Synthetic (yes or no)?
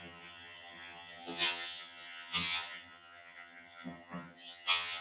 yes